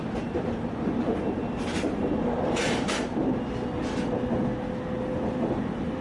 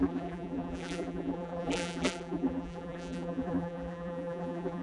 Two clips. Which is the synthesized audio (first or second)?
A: second